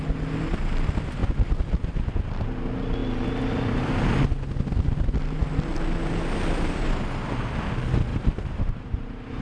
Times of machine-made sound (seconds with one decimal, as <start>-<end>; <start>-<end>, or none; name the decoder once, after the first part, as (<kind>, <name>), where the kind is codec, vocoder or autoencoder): 8.1-9.4 (vocoder, BigVGAN v2)